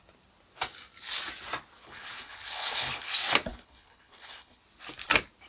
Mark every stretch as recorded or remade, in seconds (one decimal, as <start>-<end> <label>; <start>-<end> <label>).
0.0-1.8 recorded; 1.8-3.1 remade; 3.1-3.5 recorded; 3.5-4.6 remade; 4.6-5.5 recorded